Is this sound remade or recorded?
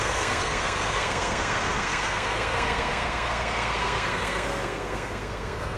remade